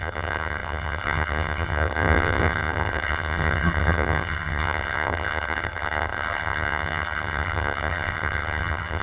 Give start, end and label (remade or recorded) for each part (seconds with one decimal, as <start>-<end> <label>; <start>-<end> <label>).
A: 0.0-9.0 remade